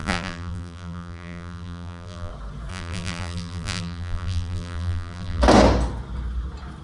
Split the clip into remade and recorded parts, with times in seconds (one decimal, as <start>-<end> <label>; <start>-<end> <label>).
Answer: 0.0-2.3 remade; 2.3-2.7 recorded; 2.7-5.4 remade; 5.4-6.8 recorded